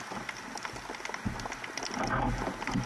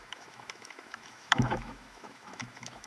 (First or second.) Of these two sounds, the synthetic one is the second